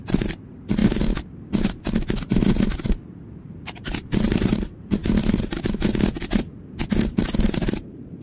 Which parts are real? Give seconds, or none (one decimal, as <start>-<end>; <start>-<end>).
0.8-3.4; 5.0-7.4